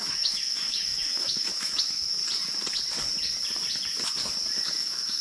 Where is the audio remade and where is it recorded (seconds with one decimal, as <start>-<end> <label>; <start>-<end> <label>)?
0.0-2.2 remade; 2.2-4.7 recorded; 4.7-5.2 remade